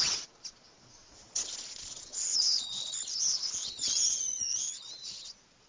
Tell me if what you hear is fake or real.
fake